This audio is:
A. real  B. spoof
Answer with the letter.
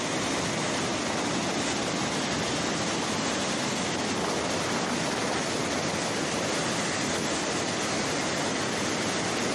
A